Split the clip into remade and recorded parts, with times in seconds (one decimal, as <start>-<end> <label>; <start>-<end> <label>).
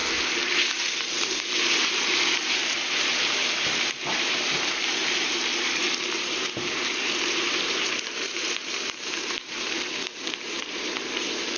0.0-11.6 remade